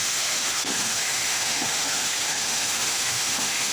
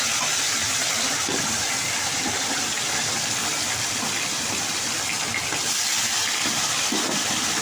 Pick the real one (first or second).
second